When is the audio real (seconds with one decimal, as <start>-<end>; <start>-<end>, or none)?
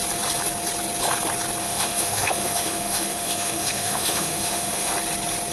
0.0-1.6; 4.9-5.5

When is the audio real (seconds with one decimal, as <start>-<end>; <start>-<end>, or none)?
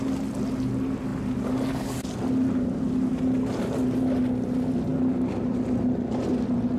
0.0-6.8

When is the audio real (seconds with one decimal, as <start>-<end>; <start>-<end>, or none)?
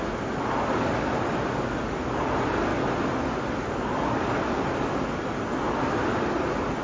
0.0-6.8